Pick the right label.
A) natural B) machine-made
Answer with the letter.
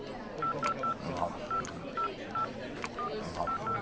A